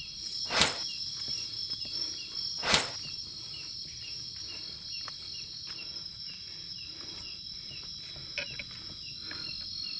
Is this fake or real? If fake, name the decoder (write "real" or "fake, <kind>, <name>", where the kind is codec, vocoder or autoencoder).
real